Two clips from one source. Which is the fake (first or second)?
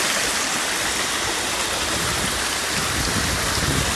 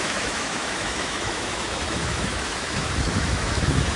second